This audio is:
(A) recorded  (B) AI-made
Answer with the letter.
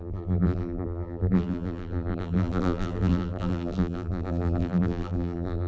B